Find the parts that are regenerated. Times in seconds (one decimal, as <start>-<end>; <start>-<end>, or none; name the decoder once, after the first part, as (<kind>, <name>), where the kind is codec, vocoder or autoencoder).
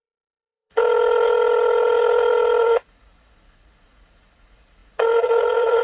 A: 0.0-0.8 (vocoder, Vocos); 2.6-5.8